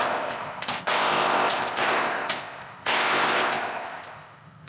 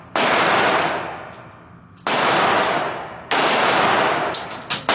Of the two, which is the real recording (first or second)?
second